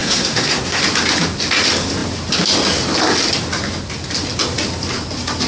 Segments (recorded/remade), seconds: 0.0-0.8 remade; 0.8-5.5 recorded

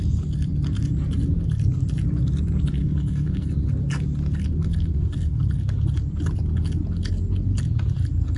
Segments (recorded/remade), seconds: 0.0-2.8 recorded; 2.8-3.5 remade; 3.5-4.7 recorded; 4.7-5.4 remade; 5.4-8.4 recorded

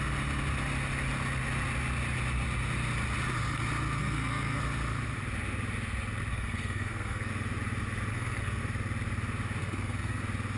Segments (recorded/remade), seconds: 0.0-4.0 recorded; 4.0-4.6 remade; 4.6-6.3 recorded; 6.3-7.3 remade; 7.3-8.1 recorded; 8.1-8.6 remade; 8.6-9.6 recorded; 9.6-10.2 remade; 10.2-10.6 recorded

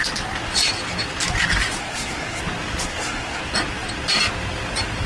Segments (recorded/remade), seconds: 0.0-1.8 recorded; 1.8-2.4 remade; 2.4-2.9 recorded; 2.9-3.4 remade; 3.4-5.1 recorded

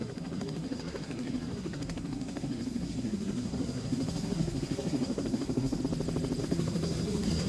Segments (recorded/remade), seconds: 0.0-5.8 remade; 5.8-6.4 recorded; 6.4-7.5 remade